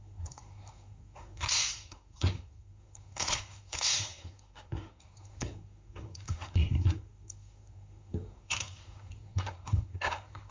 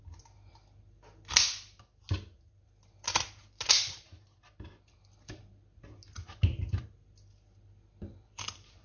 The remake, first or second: first